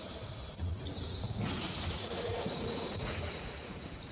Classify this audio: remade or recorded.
remade